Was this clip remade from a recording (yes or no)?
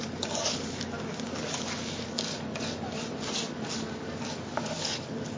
yes